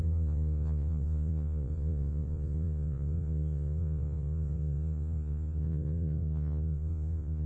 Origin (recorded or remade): remade